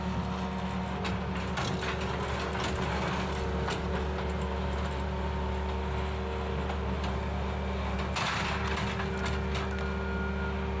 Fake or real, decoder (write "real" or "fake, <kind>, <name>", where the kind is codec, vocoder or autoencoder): real